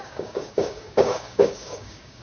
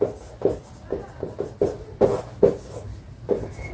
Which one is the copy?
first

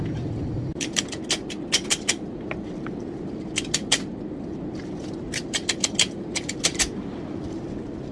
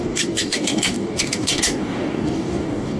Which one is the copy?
second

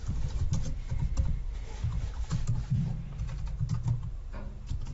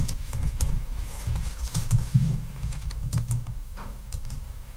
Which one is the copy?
second